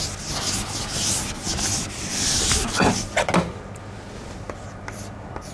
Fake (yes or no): no